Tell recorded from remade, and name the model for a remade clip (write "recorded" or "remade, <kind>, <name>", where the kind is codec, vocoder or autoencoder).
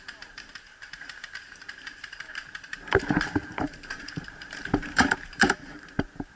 remade, vocoder, BigVGAN v2